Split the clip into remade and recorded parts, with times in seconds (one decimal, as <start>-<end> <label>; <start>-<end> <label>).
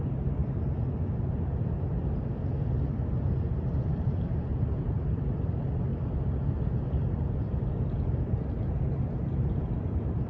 0.0-0.4 remade; 0.4-3.4 recorded; 3.4-5.9 remade; 5.9-9.5 recorded; 9.5-10.3 remade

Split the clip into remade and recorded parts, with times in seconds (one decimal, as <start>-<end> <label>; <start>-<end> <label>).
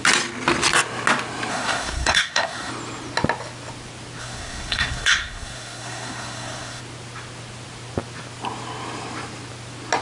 0.0-1.5 recorded; 1.5-2.7 remade; 2.7-4.2 recorded; 4.2-6.8 remade; 6.8-10.0 recorded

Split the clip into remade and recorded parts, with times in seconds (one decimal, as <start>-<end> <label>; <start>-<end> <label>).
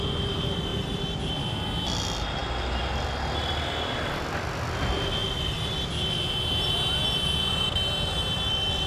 0.0-8.9 recorded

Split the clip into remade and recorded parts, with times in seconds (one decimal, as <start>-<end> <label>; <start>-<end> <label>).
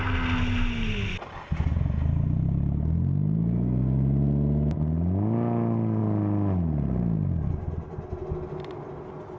0.0-9.4 recorded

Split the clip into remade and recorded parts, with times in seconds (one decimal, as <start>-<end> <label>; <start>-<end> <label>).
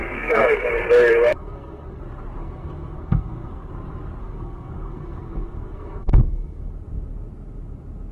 0.0-0.7 remade; 0.7-1.3 recorded; 1.3-2.0 remade; 2.0-2.4 recorded; 2.4-3.7 remade; 3.7-4.2 recorded; 4.2-6.7 remade; 6.7-8.1 recorded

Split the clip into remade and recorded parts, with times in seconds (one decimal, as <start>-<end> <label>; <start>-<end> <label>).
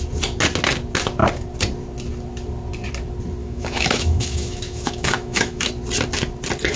0.0-3.4 recorded; 3.4-5.7 remade; 5.7-6.8 recorded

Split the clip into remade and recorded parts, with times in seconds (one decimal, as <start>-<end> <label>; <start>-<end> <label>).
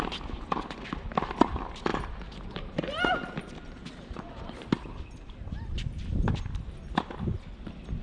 0.0-1.9 recorded; 1.9-6.3 remade; 6.3-8.0 recorded